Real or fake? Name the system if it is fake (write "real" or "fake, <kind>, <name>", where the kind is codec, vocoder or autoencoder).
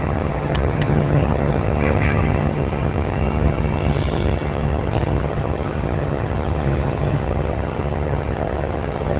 fake, vocoder, HiFi-GAN